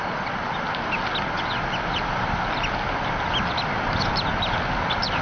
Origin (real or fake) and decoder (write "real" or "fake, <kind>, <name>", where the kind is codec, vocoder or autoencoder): real